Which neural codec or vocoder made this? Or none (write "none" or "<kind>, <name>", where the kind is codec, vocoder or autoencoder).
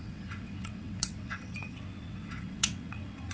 vocoder, WaveNeXt